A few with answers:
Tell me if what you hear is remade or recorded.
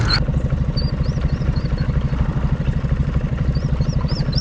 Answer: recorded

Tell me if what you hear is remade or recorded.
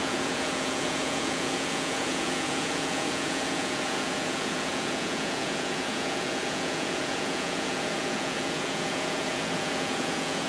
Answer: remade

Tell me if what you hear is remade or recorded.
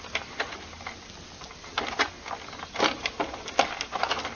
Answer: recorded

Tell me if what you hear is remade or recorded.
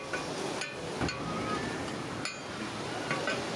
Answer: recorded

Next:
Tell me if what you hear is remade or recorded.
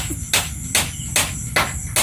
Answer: recorded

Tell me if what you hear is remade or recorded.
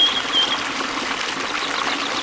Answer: recorded